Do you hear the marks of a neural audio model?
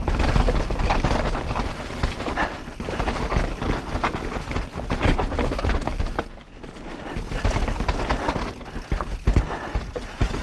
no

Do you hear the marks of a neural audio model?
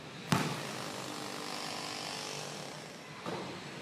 no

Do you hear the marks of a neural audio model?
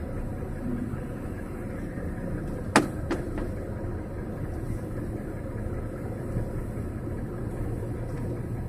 no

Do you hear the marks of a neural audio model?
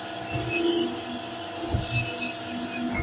no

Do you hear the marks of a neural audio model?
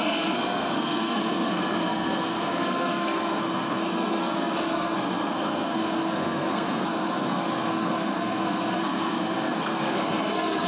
yes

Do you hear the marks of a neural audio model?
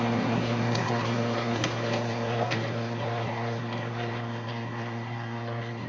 yes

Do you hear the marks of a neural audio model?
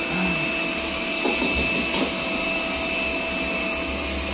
no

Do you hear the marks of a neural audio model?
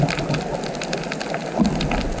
no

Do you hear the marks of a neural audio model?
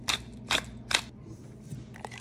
no